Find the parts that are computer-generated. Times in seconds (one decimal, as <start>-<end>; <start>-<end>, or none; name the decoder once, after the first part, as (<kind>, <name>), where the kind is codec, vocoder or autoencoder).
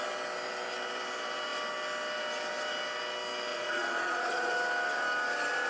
3.5-4.5 (vocoder, Vocos)